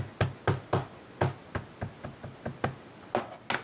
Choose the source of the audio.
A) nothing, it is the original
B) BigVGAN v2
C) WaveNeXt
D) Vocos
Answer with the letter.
A